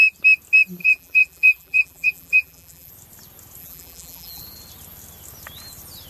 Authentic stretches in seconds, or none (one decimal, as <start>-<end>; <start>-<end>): 0.0-0.8; 2.9-3.6; 4.4-6.1